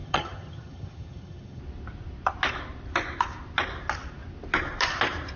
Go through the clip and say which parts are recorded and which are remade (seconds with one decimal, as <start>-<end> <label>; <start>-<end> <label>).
0.0-1.6 remade; 1.6-5.4 recorded